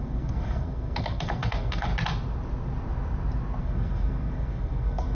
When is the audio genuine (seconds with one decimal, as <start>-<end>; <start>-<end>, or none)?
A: 1.9-3.6